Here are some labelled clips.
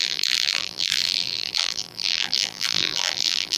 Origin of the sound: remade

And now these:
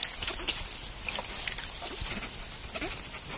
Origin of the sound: recorded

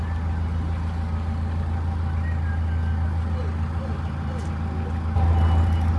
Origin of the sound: recorded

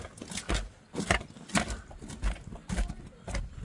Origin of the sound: recorded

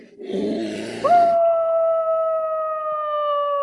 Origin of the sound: recorded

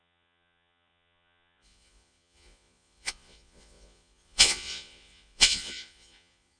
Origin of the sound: remade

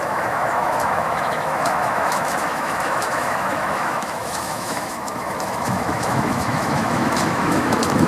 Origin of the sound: remade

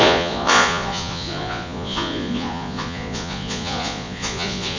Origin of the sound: remade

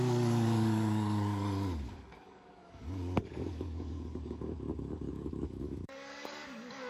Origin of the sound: remade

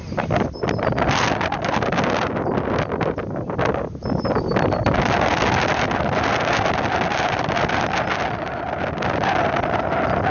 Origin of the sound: recorded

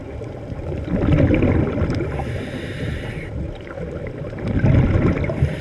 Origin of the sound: recorded